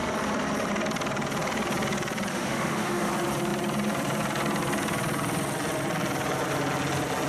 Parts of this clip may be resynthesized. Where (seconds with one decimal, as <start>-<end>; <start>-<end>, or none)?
2.3-3.1